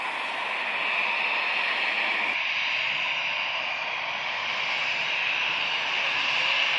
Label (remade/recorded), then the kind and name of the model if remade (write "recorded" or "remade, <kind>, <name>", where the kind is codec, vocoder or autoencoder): recorded